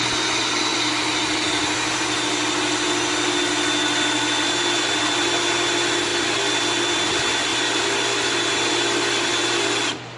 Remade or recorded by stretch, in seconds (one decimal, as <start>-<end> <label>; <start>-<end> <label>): 0.0-10.2 recorded